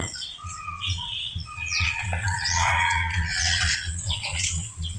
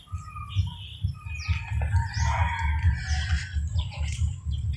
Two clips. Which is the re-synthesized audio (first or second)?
first